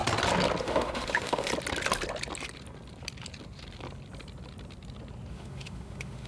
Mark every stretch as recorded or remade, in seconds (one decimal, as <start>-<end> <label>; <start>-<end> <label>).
0.0-0.6 recorded; 0.6-1.5 remade; 1.5-5.3 recorded; 5.3-6.3 remade